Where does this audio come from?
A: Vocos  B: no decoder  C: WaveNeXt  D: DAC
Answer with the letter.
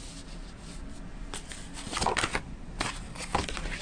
B